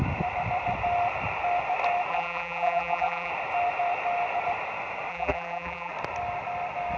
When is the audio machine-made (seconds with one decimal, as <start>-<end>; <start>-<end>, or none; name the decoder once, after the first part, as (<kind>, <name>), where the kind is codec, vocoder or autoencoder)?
2.1-3.3 (vocoder, BigVGAN v2); 5.1-5.9